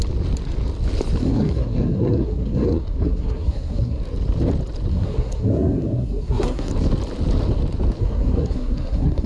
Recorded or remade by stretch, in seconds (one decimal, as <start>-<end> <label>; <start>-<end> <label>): 0.0-1.2 recorded; 1.2-4.0 remade; 4.0-4.9 recorded; 4.9-6.7 remade; 6.7-8.0 recorded; 8.0-9.3 remade